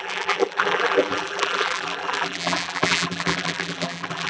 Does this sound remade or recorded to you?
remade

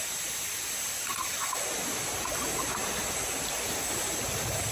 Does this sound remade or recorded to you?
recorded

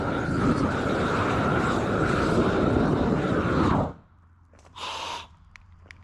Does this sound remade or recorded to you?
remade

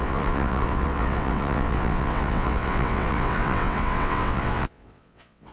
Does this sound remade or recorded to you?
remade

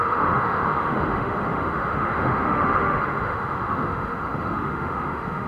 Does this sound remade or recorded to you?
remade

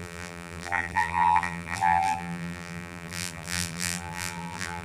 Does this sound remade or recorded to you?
remade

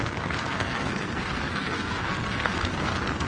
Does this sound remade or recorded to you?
remade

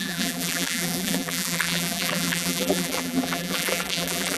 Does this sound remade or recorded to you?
remade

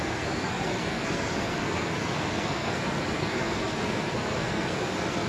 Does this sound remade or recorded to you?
remade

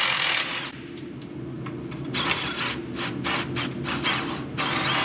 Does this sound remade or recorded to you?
recorded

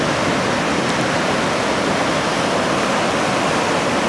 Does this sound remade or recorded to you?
recorded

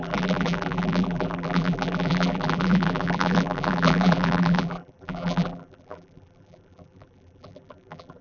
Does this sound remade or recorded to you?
remade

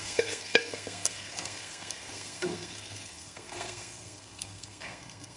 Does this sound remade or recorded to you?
remade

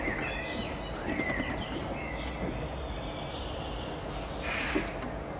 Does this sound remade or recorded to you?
recorded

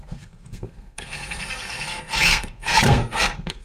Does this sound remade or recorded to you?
remade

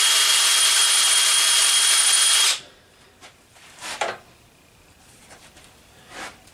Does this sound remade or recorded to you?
remade